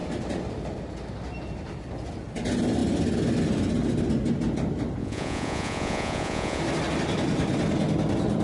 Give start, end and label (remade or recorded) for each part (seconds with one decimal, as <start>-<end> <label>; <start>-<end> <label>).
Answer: 0.0-5.0 recorded; 5.0-6.6 remade; 6.6-8.4 recorded